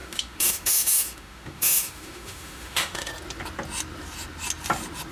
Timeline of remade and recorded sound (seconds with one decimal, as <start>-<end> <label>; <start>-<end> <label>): 0.0-3.1 remade; 3.1-5.1 recorded